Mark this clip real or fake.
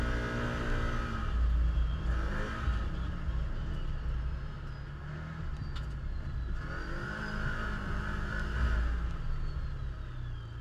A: real